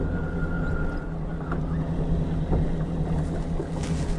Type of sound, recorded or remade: recorded